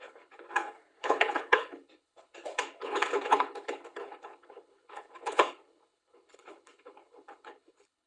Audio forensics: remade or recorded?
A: remade